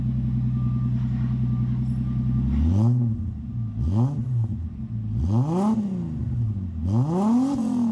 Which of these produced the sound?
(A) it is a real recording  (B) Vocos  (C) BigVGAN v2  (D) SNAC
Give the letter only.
A